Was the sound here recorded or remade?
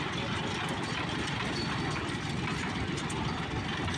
recorded